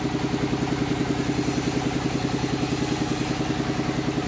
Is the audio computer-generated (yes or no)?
no